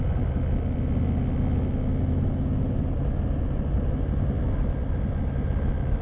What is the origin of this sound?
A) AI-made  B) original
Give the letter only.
B